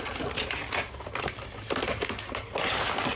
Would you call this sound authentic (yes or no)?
yes